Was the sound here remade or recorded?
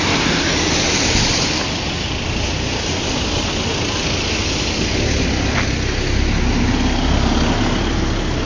recorded